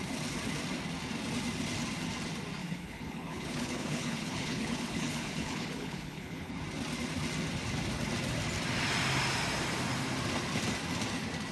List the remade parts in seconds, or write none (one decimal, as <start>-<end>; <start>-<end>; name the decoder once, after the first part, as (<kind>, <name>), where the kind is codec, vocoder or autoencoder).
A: 2.6-6.5 (codec, HILCodec)